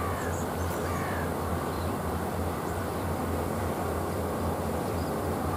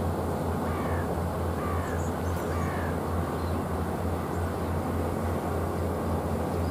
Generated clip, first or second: first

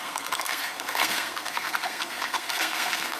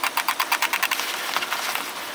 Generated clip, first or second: first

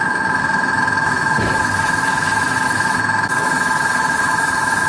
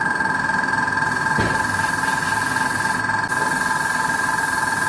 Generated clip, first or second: first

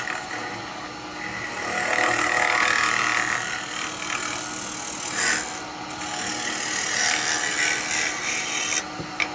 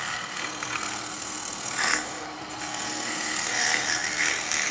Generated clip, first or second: second